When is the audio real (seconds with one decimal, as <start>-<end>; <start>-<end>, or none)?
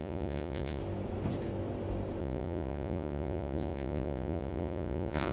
0.8-2.2